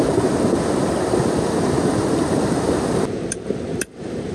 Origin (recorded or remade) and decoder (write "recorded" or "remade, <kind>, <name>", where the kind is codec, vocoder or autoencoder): recorded